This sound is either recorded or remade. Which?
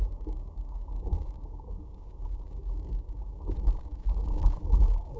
remade